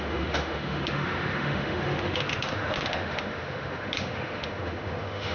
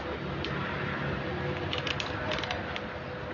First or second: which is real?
second